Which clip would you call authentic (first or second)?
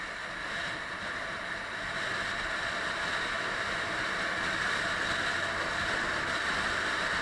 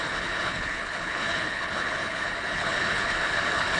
first